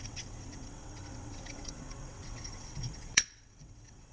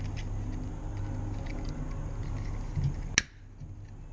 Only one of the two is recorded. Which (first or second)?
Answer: second